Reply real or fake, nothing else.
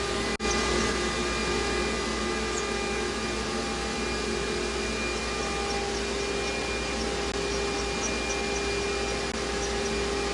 real